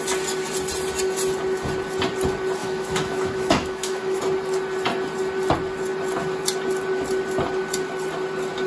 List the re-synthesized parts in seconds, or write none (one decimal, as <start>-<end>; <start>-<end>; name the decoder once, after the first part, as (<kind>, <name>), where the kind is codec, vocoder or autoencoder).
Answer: 2.6-4.2 (autoencoder, DAC-VAE)